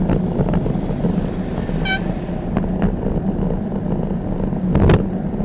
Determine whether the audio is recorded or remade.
recorded